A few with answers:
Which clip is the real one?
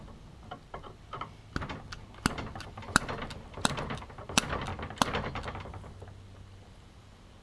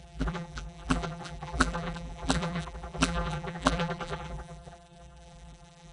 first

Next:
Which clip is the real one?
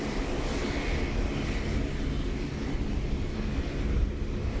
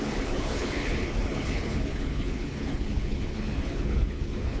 first